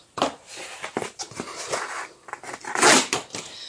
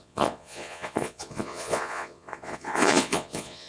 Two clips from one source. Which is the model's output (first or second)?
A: second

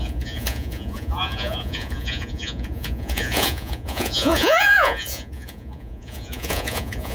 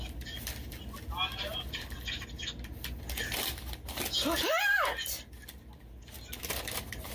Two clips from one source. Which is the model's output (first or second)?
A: first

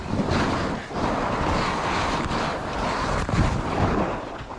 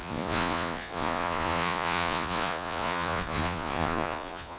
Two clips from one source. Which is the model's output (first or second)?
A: second